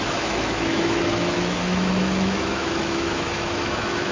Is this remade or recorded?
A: remade